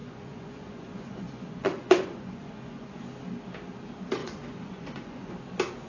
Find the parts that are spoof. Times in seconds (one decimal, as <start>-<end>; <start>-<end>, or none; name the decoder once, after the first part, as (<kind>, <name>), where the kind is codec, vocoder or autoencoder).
0.0-3.0 (vocoder, Vocos); 4.2-5.3

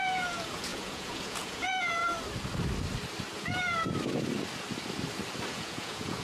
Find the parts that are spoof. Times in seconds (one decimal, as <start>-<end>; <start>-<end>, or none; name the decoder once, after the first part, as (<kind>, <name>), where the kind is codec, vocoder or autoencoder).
0.0-2.0 (vocoder, Vocos); 5.5-6.2

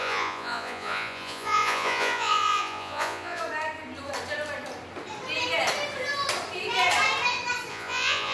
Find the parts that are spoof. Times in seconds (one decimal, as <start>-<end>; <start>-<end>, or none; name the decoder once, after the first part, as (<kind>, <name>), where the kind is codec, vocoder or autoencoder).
0.0-3.4 (vocoder, Vocos); 7.7-8.3

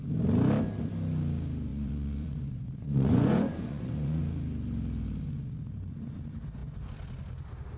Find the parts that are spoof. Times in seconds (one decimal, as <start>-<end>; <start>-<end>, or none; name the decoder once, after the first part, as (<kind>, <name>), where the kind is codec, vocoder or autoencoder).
1.7-4.2 (vocoder, Vocos)

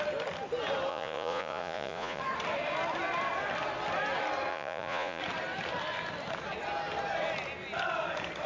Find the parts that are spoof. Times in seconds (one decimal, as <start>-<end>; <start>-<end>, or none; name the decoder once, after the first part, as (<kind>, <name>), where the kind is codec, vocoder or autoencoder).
0.9-2.2 (vocoder, Vocos); 4.5-5.2

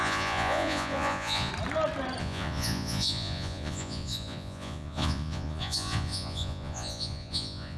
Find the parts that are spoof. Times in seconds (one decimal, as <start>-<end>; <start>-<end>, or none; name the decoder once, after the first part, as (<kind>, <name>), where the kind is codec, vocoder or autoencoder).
0.0-1.5 (vocoder, Vocos); 2.2-7.8

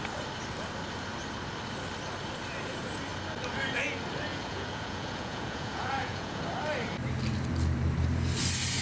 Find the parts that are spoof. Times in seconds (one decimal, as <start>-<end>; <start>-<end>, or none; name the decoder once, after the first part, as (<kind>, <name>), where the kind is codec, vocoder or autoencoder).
4.3-6.4 (vocoder, Vocos)